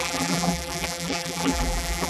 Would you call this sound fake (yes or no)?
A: yes